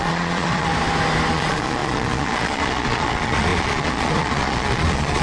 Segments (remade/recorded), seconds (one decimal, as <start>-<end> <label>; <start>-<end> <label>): 0.0-0.7 remade; 0.7-1.3 recorded; 1.3-5.2 remade